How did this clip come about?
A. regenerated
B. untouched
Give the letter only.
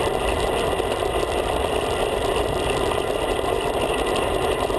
B